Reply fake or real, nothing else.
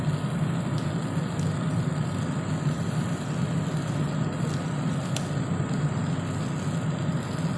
real